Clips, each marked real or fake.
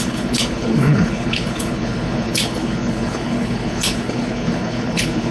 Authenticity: fake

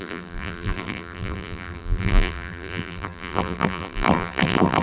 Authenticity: fake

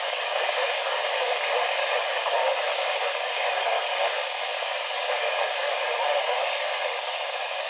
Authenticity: fake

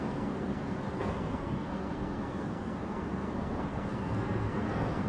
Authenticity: fake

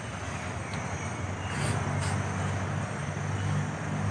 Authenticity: real